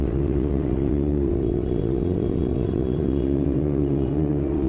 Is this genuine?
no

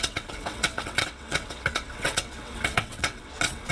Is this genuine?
no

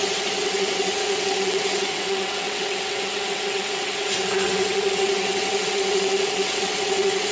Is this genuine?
no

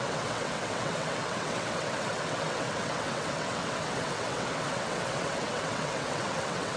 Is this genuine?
no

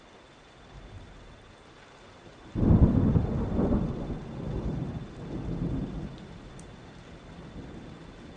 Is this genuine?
yes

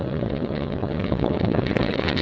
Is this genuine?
no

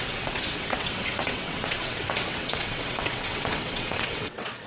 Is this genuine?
no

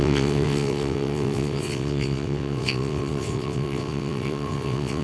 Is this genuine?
no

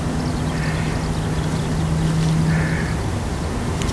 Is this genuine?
yes